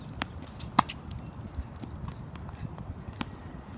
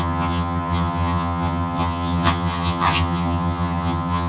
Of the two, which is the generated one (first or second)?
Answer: second